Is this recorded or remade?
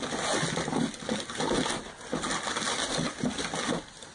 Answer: recorded